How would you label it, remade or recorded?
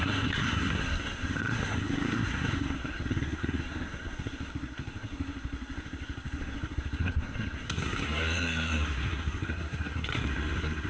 remade